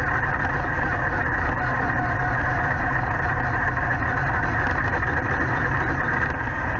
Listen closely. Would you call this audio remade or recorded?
recorded